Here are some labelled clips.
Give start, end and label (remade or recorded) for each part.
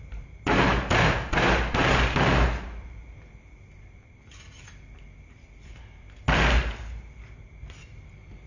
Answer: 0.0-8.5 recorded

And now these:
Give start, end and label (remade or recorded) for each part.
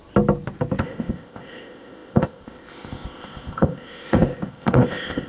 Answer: 0.0-0.8 recorded; 0.8-5.3 remade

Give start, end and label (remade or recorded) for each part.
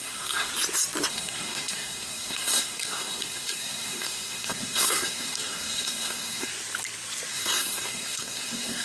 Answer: 0.0-0.5 remade; 0.5-1.1 recorded; 1.1-6.5 remade; 6.5-7.3 recorded; 7.3-8.8 remade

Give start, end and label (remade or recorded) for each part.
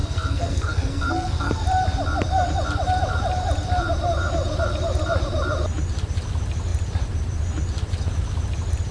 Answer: 0.0-1.5 remade; 1.5-8.9 recorded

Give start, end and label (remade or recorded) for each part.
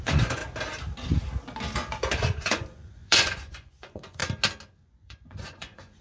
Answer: 0.0-0.4 remade; 0.4-1.9 recorded; 1.9-4.2 remade; 4.2-4.8 recorded; 4.8-6.0 remade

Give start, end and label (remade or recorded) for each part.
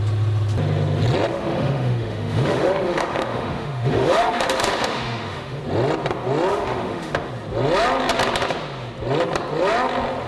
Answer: 0.0-1.3 recorded; 1.3-5.6 remade; 5.6-6.5 recorded; 6.5-7.3 remade; 7.3-10.3 recorded